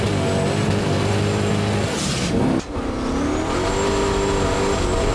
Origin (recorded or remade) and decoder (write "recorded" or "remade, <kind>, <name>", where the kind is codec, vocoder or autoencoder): recorded